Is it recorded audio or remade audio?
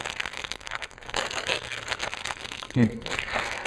remade